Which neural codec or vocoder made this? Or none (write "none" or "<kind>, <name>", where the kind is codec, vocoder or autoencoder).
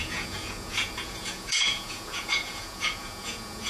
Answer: vocoder, Vocos